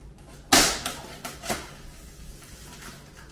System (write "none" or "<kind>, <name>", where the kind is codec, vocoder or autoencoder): none